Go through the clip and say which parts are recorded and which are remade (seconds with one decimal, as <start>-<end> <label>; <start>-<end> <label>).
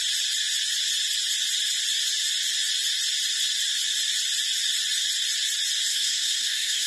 0.0-5.9 recorded; 5.9-6.9 remade